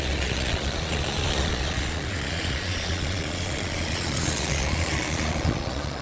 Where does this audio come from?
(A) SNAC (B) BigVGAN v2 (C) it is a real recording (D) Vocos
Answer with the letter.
D